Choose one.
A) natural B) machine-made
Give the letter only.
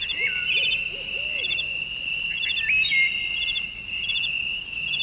A